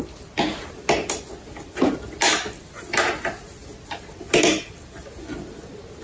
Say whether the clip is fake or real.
real